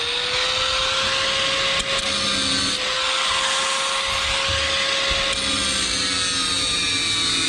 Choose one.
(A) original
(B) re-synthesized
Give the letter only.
A